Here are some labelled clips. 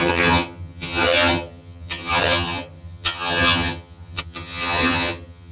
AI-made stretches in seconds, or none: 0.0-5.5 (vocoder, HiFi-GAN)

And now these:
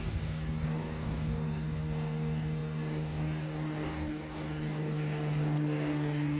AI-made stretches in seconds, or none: 0.0-6.4 (codec, DAC)

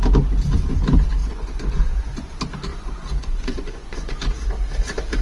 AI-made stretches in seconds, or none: 1.2-2.3 (vocoder, Vocos); 2.7-4.1